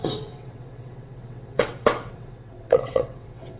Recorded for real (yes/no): no